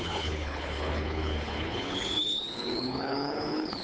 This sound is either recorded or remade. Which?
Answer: remade